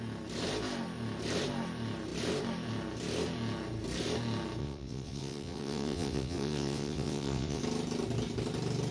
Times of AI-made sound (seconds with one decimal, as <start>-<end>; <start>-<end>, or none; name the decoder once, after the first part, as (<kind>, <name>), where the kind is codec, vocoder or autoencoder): 4.6-7.6 (vocoder, WaveNeXt)